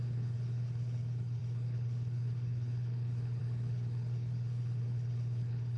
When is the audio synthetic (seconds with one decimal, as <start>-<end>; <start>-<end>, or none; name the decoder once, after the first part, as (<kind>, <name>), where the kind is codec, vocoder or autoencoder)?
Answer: 0.0-5.8 (codec, HILCodec)

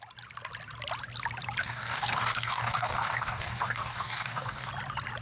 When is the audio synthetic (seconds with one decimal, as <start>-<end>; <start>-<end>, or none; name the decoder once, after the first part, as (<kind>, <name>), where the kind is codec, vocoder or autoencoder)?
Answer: 1.6-4.7 (codec, DAC)

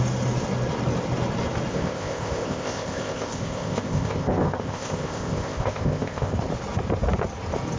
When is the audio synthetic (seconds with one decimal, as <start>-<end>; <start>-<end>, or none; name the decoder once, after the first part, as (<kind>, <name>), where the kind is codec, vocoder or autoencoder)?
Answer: 1.7-6.4 (codec, ZipCodec)

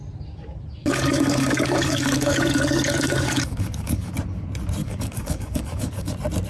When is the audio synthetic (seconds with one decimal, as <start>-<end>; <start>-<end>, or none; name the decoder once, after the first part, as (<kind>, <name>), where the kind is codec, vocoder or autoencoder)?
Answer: 0.8-4.1 (codec, DAC); 4.8-6.1

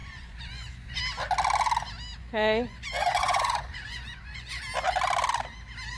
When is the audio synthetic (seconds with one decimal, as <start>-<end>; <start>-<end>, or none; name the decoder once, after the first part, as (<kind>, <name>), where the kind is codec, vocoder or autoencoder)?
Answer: 0.0-1.0 (vocoder, Vocos); 2.2-4.6